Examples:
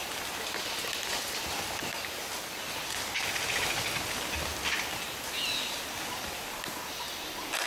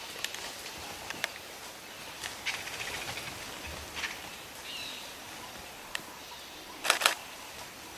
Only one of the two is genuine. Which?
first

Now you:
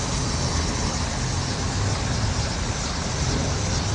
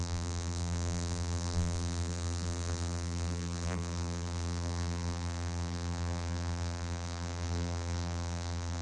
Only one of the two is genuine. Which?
first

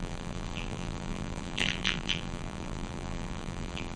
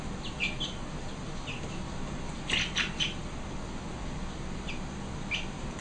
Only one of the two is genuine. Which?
second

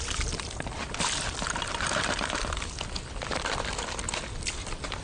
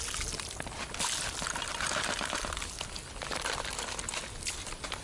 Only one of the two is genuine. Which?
second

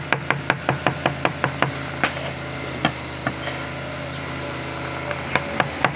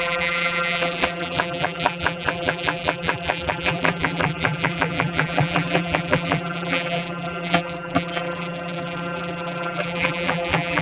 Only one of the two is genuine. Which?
first